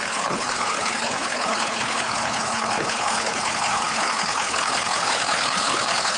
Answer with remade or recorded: remade